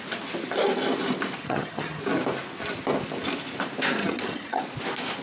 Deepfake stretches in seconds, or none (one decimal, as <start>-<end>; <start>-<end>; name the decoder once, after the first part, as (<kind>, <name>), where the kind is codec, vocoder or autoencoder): 1.4-2.0 (vocoder, HiFi-GAN); 4.0-4.6